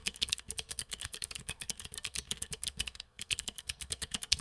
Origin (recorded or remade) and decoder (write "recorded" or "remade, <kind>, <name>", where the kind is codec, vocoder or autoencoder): remade, codec, SNAC